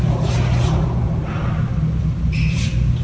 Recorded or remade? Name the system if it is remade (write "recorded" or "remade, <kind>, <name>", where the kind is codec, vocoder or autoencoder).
recorded